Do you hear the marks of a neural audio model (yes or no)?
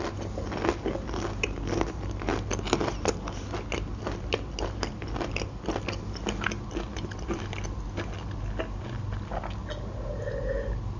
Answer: no